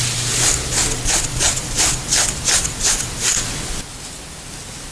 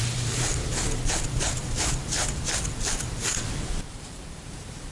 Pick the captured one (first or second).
first